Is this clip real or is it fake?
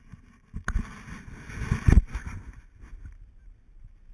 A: real